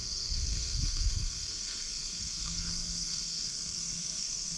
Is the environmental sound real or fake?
fake